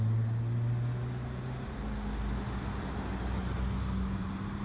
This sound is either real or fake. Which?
real